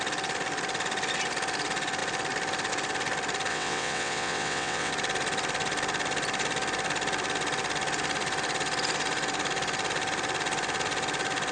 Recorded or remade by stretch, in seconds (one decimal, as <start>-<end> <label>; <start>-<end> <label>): 0.0-3.5 recorded; 3.5-4.9 remade; 4.9-11.5 recorded